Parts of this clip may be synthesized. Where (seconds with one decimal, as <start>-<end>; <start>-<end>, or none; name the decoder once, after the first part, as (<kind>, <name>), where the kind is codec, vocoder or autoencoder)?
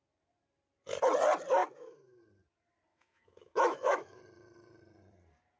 1.6-2.2 (autoencoder, DAC-VAE); 2.9-4.2